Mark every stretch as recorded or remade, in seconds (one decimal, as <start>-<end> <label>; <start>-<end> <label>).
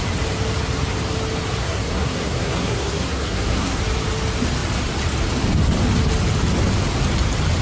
0.0-1.6 recorded; 1.6-3.8 remade; 3.8-7.6 recorded